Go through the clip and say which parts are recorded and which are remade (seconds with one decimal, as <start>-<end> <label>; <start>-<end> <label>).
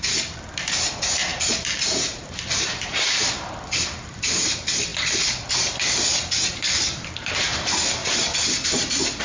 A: 0.0-4.9 remade; 4.9-6.3 recorded; 6.3-8.0 remade; 8.0-9.2 recorded